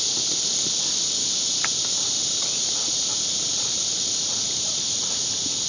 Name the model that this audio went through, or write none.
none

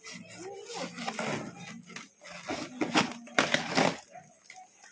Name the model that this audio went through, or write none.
none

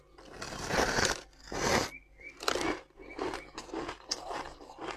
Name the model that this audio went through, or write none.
none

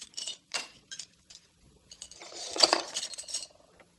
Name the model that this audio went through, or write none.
vocoder, Vocos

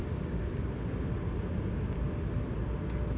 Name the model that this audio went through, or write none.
none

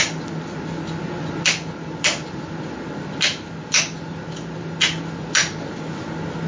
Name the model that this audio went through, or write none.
none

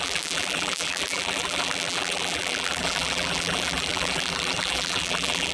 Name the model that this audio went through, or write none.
vocoder, BigVGAN v2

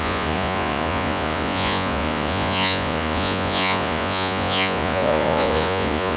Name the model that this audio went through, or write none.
vocoder, Vocos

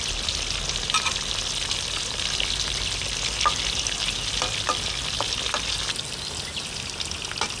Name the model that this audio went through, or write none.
none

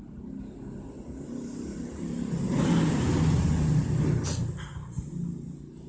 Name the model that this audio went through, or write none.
none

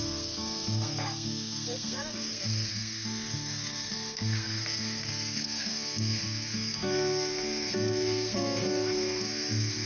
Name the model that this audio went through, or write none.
codec, SNAC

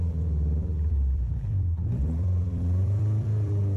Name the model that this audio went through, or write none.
vocoder, BigVGAN v2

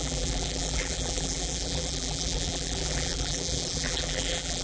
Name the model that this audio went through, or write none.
vocoder, BigVGAN v2